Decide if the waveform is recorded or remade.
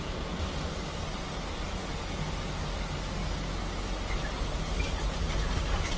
recorded